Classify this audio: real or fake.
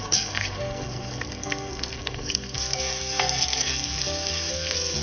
fake